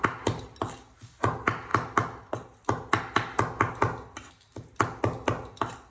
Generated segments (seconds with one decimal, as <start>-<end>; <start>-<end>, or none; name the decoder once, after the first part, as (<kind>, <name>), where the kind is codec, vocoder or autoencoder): none